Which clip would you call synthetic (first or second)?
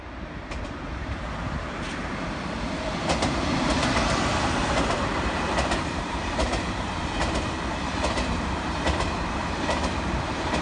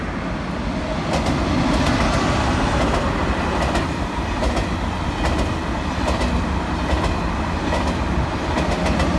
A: first